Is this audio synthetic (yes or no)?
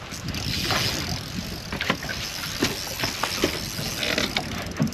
no